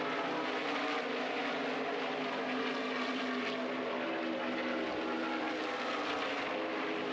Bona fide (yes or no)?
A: yes